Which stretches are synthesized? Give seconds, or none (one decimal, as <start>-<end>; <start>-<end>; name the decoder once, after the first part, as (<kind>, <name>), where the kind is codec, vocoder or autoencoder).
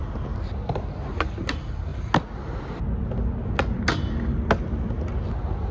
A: none